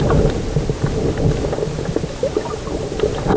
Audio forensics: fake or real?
real